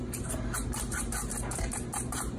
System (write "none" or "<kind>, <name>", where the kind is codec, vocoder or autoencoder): vocoder, BigVGAN v2